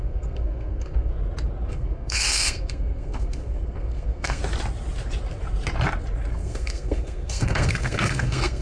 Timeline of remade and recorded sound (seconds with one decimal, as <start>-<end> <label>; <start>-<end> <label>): 0.0-1.1 remade; 1.1-1.7 recorded; 1.7-4.4 remade; 4.4-6.3 recorded; 6.3-8.6 remade